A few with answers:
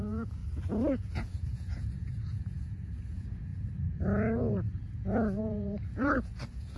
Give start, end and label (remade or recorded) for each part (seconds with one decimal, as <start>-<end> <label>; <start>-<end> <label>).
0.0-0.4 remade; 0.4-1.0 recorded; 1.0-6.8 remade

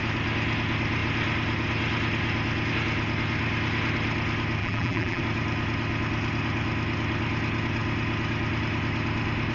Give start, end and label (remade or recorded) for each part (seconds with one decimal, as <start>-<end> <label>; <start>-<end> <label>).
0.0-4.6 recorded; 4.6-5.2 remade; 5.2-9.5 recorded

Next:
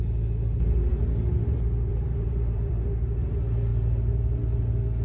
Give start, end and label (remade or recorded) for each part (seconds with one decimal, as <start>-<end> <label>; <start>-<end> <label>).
0.0-1.9 recorded; 1.9-2.7 remade; 2.7-3.7 recorded; 3.7-4.4 remade; 4.4-5.0 recorded

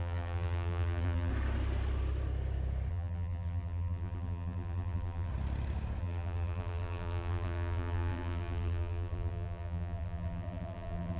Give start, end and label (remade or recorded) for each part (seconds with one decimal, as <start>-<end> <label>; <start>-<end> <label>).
0.0-1.3 remade; 1.3-2.9 recorded; 2.9-5.3 remade; 5.3-6.0 recorded; 6.0-11.2 remade

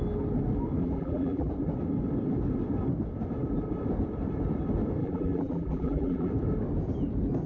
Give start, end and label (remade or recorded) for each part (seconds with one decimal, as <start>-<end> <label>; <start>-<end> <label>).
0.0-0.8 recorded; 0.8-1.5 remade; 1.5-5.0 recorded; 5.0-6.3 remade; 6.3-7.5 recorded